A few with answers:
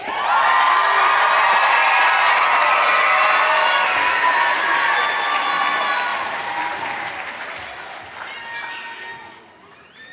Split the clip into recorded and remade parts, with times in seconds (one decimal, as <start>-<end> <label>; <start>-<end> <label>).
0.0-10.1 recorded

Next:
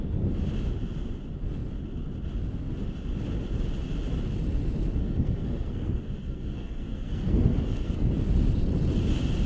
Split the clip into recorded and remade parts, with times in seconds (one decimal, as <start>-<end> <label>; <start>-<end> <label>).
0.0-5.0 recorded; 5.0-8.1 remade; 8.1-9.5 recorded

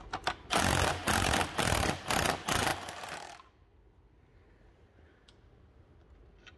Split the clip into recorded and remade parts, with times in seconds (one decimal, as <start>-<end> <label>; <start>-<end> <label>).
0.0-6.6 recorded